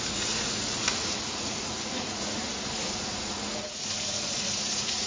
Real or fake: fake